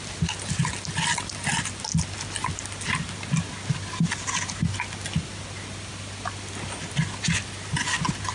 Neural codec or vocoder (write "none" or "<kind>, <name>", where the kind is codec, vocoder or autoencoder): none